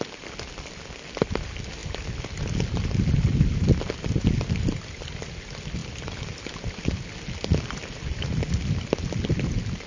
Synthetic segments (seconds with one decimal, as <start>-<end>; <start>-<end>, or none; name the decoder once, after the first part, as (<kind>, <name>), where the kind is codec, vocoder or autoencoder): none